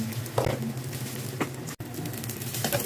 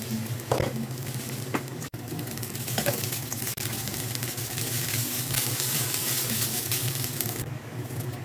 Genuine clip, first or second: first